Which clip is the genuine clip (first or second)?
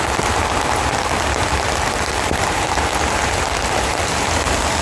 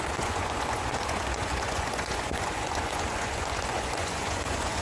first